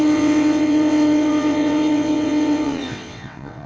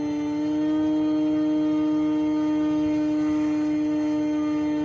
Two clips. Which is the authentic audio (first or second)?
second